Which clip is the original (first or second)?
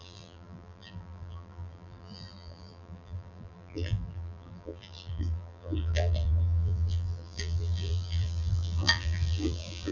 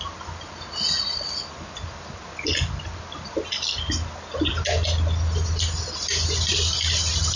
second